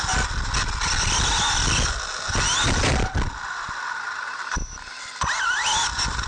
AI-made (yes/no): no